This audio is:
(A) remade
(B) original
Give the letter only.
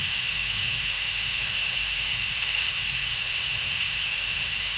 A